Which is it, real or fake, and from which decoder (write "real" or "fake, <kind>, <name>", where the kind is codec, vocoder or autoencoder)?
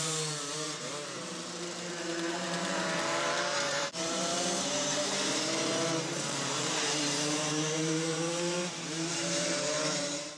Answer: fake, vocoder, BigVGAN v2